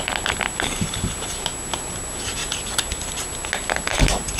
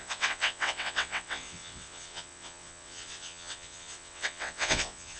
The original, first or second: first